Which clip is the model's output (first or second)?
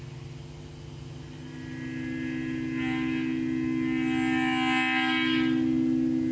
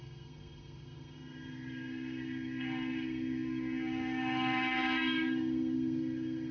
second